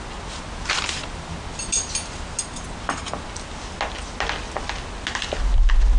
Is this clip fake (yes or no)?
no